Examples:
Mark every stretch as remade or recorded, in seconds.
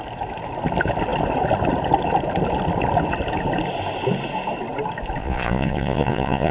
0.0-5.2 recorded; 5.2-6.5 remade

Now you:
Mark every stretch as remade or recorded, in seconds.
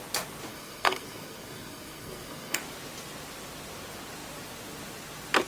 0.0-0.5 recorded; 0.5-2.6 remade; 2.6-5.5 recorded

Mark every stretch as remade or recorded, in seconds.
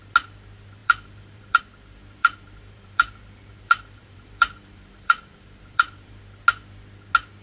0.0-0.8 recorded; 0.8-1.6 remade; 1.6-2.2 recorded; 2.2-6.2 remade; 6.2-7.4 recorded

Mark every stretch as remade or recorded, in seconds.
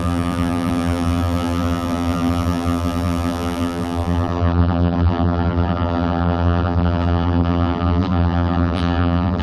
0.0-9.4 remade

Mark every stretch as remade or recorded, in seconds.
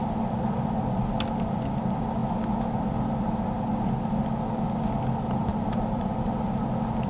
0.0-5.5 recorded; 5.5-6.3 remade; 6.3-7.1 recorded